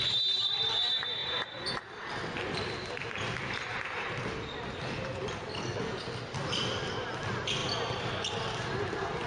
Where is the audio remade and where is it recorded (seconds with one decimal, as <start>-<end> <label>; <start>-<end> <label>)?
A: 0.0-9.3 recorded